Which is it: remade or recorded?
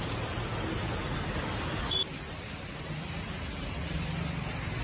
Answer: recorded